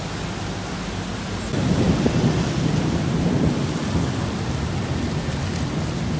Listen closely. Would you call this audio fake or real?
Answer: real